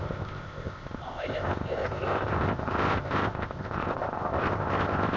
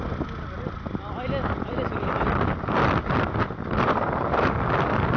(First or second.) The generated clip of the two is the first